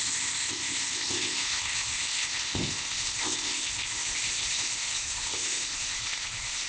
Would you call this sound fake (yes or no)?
yes